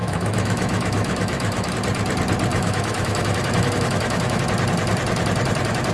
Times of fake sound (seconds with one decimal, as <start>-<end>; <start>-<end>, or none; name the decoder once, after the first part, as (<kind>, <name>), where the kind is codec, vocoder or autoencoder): 0.0-1.7 (autoencoder, DAC-VAE); 2.5-4.4

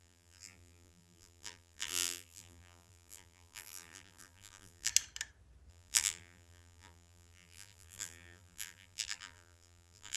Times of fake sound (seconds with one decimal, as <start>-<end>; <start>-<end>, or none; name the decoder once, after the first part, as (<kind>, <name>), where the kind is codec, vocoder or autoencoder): 0.0-4.9 (vocoder, BigVGAN v2); 5.7-10.2

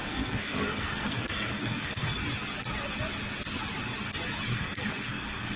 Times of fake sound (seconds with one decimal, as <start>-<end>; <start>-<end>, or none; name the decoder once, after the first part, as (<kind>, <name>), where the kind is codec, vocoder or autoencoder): 0.0-2.1 (codec, SNAC); 4.5-5.6

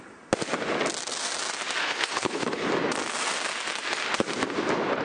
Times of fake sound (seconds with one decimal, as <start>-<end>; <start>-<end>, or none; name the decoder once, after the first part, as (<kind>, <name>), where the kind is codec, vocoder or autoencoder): 1.8-2.7 (codec, HILCodec)

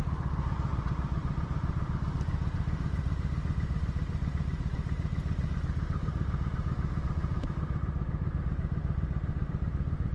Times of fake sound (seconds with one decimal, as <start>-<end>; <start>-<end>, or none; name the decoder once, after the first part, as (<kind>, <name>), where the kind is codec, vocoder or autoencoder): 0.0-10.1 (vocoder, BigVGAN v2)

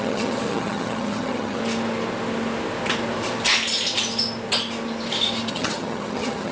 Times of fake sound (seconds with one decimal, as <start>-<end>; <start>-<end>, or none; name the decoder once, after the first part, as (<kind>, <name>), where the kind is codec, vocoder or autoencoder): 0.0-1.6 (vocoder, HiFi-GAN); 5.5-6.5

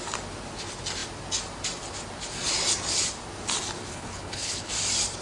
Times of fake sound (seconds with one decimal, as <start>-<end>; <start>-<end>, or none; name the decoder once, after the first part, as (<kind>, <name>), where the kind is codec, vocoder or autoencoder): 3.9-4.7 (codec, HILCodec)